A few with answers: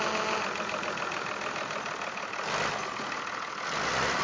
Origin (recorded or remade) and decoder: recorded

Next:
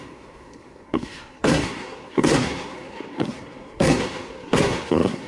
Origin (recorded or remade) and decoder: remade, codec, SNAC